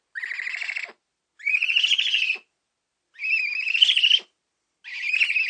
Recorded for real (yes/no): yes